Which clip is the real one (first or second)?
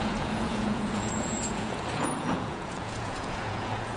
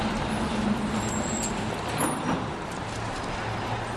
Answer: second